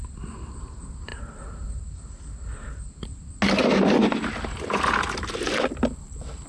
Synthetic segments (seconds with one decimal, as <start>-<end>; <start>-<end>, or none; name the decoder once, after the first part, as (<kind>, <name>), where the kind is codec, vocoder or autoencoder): none